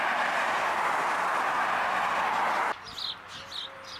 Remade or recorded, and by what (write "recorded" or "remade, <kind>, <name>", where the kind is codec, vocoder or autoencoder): recorded